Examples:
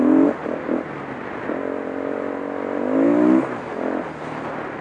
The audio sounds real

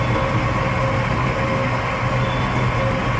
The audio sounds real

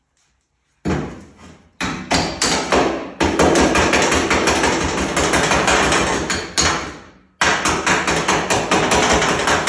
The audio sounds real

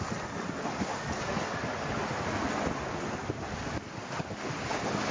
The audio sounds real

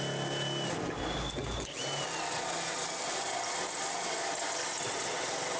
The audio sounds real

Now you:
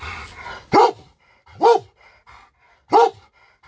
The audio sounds real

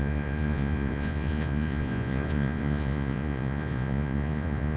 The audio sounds fake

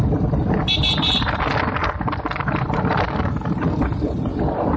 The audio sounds real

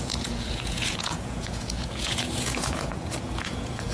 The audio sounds fake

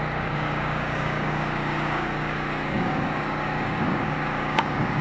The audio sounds fake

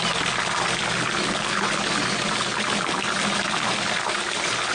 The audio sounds real